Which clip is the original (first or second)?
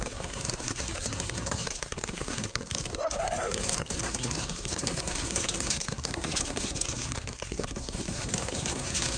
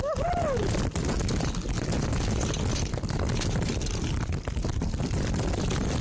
second